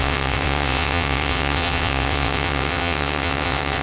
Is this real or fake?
fake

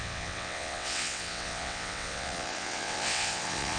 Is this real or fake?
fake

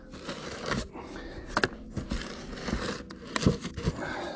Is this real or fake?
real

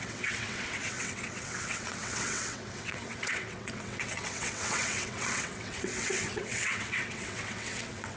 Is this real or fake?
fake